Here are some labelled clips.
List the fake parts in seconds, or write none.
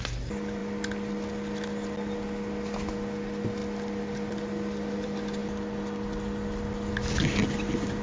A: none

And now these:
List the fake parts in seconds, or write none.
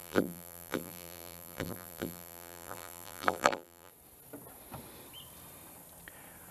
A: 0.0-3.9 (vocoder, BigVGAN v2)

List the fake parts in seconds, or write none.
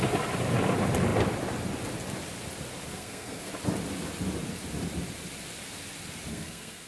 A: 2.9-3.5 (codec, SNAC); 6.3-6.9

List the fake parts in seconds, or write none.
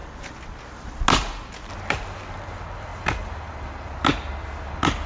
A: none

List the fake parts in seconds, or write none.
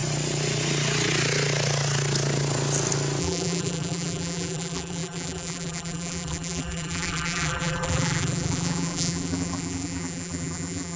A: 3.2-11.0 (vocoder, BigVGAN v2)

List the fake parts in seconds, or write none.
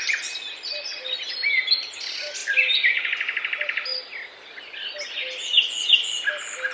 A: none